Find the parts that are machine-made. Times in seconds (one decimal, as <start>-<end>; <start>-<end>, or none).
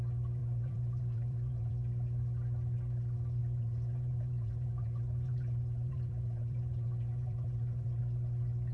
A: 0.4-1.7; 3.4-8.0